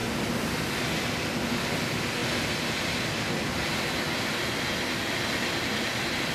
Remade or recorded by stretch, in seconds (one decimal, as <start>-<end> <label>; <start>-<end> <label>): 0.0-6.3 recorded